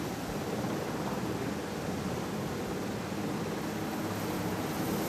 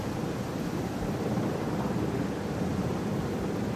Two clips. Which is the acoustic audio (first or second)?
first